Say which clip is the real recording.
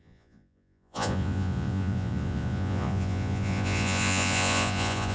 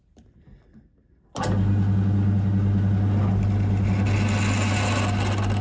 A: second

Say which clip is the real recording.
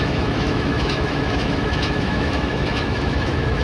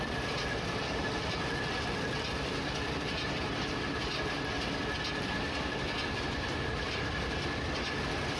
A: second